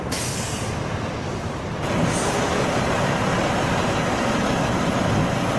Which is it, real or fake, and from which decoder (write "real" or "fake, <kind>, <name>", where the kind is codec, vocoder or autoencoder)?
real